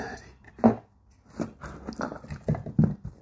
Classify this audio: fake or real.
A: real